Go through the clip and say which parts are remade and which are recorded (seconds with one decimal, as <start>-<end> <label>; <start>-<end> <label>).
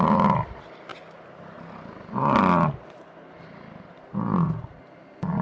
0.0-5.4 recorded